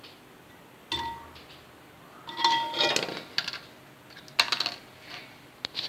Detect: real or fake real